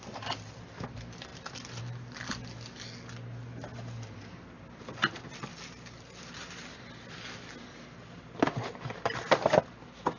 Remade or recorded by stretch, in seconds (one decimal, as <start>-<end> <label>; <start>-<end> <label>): 0.0-10.2 recorded